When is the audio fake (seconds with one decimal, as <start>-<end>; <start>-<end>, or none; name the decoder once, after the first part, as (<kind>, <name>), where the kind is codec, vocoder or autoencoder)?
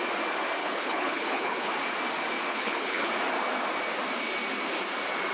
0.6-1.7 (codec, HILCodec); 2.5-3.1